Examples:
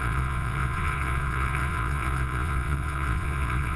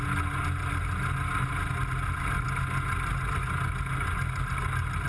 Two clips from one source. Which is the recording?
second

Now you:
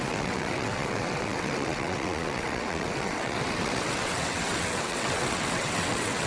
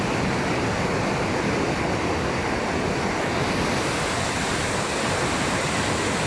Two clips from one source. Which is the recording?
second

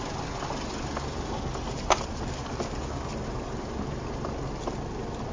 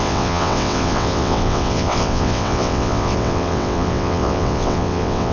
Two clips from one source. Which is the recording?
first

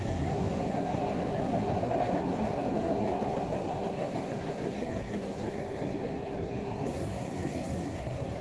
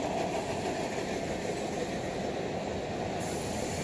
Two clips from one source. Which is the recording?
second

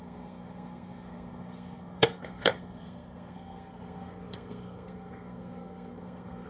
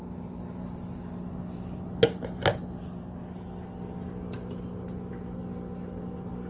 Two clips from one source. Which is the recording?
second